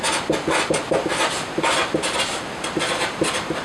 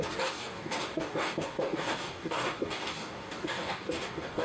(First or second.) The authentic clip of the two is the first